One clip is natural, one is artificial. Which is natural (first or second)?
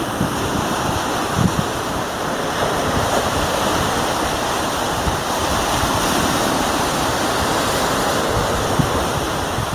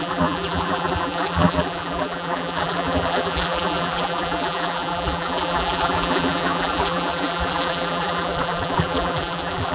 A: first